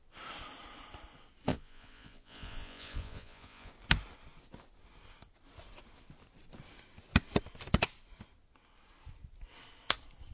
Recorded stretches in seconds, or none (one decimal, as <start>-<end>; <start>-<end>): 0.0-1.5; 3.7-10.3